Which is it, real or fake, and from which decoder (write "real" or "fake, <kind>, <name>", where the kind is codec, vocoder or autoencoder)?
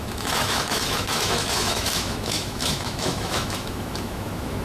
fake, autoencoder, DAC-VAE